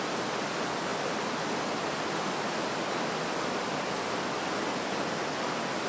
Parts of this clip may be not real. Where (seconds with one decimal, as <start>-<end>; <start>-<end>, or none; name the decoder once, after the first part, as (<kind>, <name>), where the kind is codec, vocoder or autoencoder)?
none